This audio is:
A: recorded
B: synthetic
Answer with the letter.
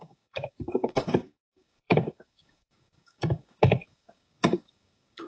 B